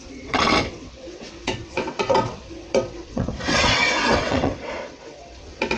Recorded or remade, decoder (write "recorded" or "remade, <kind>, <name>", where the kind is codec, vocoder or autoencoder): remade, vocoder, WaveNeXt